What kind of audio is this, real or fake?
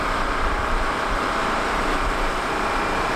fake